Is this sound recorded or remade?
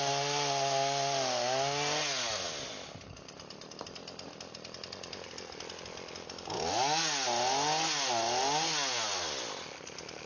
recorded